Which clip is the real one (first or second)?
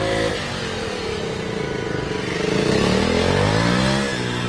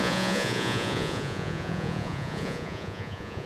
first